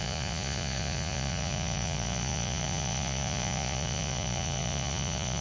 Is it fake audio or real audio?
fake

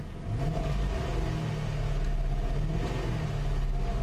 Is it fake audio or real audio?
real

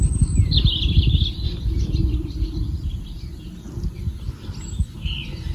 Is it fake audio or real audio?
real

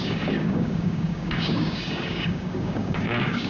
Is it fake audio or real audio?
fake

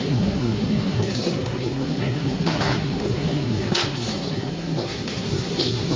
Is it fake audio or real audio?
fake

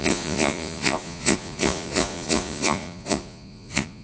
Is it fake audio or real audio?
fake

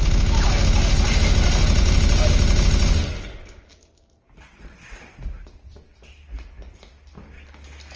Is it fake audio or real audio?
real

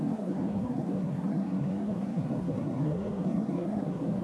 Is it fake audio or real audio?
fake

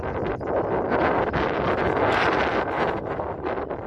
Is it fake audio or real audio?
real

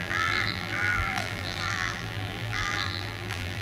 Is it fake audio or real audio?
fake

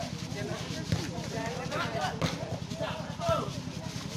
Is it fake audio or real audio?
real